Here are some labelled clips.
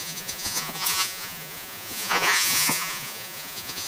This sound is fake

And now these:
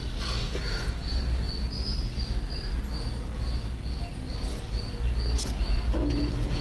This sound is real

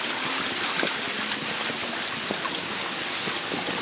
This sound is real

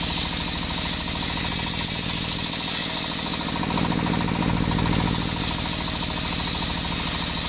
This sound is real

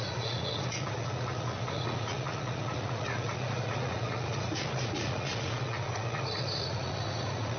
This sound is fake